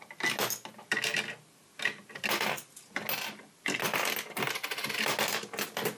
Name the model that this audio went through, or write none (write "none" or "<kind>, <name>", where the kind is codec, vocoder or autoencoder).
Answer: none